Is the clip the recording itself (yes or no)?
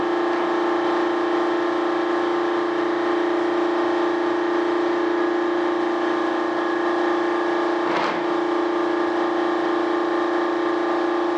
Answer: yes